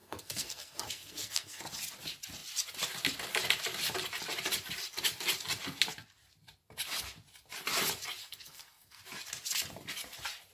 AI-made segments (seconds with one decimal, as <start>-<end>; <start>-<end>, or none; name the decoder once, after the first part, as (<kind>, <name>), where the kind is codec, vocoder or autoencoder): 0.0-1.6 (codec, SNAC); 8.2-9.0